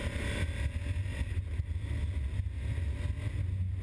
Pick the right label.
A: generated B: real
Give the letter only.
B